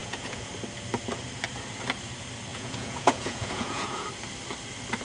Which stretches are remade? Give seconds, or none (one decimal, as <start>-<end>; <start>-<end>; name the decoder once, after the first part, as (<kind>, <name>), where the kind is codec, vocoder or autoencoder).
0.0-0.5 (vocoder, Vocos); 2.5-4.1